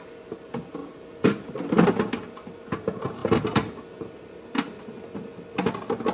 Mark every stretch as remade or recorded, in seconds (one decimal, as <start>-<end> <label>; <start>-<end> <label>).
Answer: 0.0-6.1 recorded